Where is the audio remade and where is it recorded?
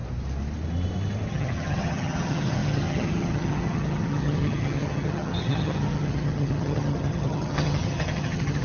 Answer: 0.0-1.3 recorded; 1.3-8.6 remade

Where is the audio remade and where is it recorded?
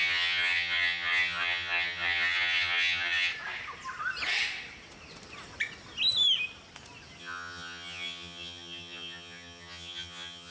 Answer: 0.0-3.3 remade; 3.3-7.2 recorded; 7.2-10.5 remade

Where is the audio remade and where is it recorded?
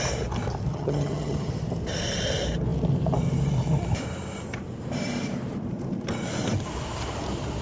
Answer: 0.0-0.7 recorded; 0.7-1.5 remade; 1.5-7.6 recorded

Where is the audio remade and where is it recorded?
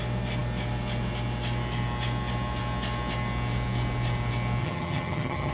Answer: 0.0-4.6 recorded; 4.6-5.5 remade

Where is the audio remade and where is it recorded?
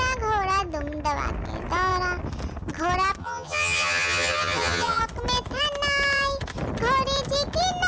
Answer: 0.0-3.2 recorded; 3.2-5.0 remade; 5.0-7.9 recorded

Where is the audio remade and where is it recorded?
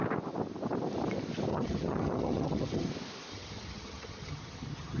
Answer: 0.0-1.5 recorded; 1.5-2.9 remade; 2.9-3.3 recorded; 3.3-5.0 remade